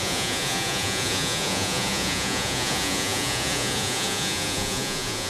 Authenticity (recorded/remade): remade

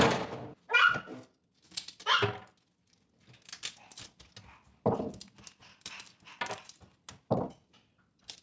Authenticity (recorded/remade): recorded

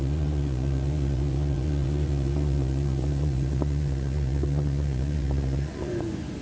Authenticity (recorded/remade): remade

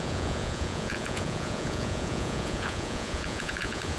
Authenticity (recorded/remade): remade